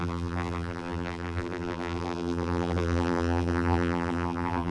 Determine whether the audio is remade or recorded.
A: remade